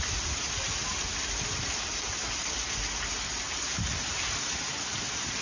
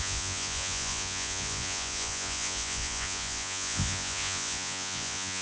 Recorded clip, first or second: first